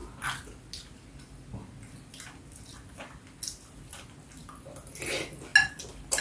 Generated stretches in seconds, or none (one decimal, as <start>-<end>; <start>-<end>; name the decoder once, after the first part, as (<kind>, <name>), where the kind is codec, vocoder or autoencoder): none

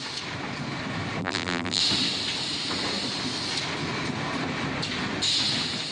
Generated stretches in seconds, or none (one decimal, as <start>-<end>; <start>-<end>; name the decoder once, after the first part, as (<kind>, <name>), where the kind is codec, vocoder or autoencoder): 1.2-1.8 (vocoder, BigVGAN v2)

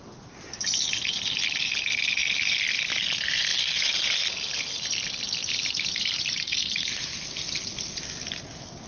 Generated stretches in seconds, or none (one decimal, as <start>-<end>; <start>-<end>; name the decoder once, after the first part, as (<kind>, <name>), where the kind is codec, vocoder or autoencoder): 3.5-4.1 (vocoder, BigVGAN v2); 5.4-7.1

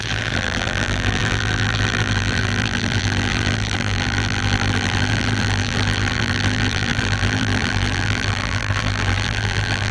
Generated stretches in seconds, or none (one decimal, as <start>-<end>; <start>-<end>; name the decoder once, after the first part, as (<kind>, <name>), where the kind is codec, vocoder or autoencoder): 0.0-9.9 (vocoder, BigVGAN v2)